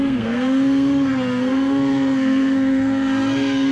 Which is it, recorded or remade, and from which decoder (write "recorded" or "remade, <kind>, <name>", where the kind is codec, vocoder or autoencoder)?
remade, codec, SNAC